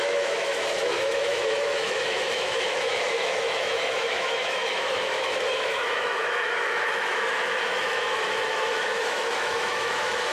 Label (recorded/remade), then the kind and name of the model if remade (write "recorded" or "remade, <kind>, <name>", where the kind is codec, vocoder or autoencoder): remade, autoencoder, DAC-VAE